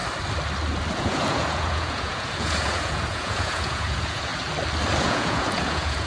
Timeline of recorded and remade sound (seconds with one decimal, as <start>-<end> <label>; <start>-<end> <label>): 0.0-0.9 recorded; 0.9-4.3 remade; 4.3-5.0 recorded; 5.0-6.1 remade